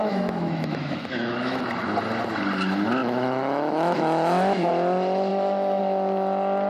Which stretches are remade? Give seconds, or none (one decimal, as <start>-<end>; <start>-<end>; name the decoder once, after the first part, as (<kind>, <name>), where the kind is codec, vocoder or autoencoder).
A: 0.0-1.6 (autoencoder, DAC-VAE); 3.0-4.7; 5.3-5.8